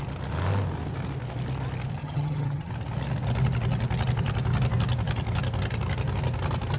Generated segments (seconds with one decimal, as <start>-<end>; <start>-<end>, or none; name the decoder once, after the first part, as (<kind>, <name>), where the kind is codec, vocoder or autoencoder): 2.0-2.7 (vocoder, HiFi-GAN)